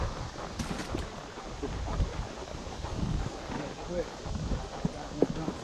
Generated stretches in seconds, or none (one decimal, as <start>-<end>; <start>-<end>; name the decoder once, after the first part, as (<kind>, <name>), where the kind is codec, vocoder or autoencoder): 2.4-3.5 (codec, DAC)